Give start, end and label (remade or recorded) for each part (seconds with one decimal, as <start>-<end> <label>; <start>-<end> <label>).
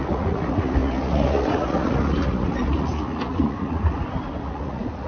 0.0-3.8 remade; 3.8-4.4 recorded; 4.4-5.1 remade